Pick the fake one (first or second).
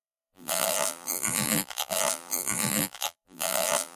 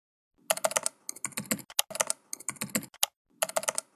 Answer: first